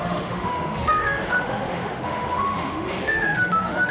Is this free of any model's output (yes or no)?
no